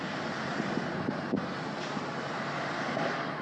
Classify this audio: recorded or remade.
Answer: recorded